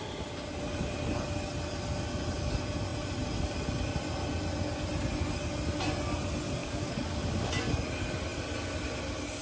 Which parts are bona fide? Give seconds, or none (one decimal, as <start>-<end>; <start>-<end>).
0.0-6.6; 7.5-9.4